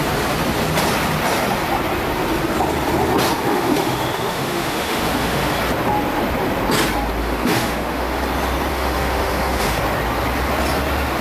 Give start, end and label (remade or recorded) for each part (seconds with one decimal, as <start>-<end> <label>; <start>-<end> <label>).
0.0-3.5 recorded; 3.5-5.5 remade; 5.5-7.2 recorded; 7.2-8.2 remade; 8.2-8.7 recorded; 8.7-9.8 remade; 9.8-11.2 recorded